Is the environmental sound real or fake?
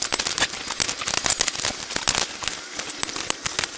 real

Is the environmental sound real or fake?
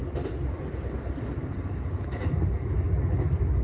real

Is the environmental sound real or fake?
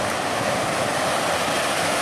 real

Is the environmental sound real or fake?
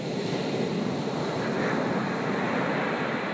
real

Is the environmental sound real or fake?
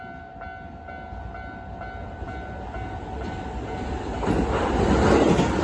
real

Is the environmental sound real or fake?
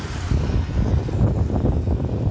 real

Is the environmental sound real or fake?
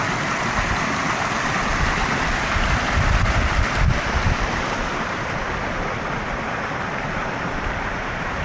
real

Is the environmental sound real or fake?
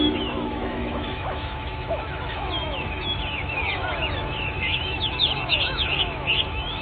fake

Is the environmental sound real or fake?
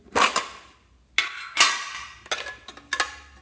real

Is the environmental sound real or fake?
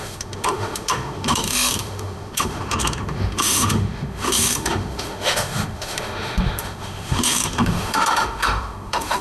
fake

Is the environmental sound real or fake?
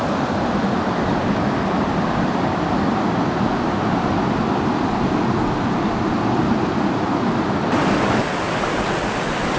real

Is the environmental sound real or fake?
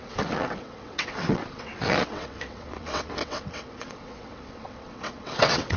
fake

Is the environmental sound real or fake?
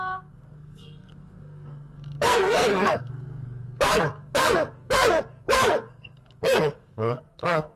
fake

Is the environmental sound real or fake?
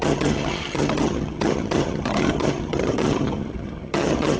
fake